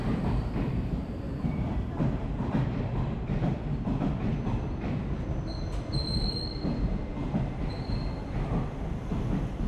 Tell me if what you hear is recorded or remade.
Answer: remade